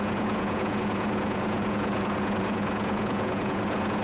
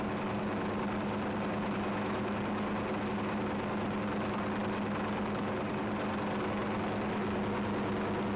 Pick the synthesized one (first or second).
first